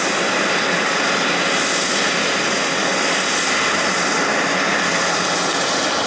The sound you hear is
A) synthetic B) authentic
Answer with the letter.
B